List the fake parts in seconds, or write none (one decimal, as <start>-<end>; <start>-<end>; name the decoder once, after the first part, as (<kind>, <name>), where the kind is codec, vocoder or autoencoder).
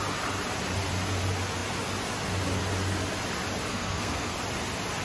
3.7-4.3 (codec, SNAC)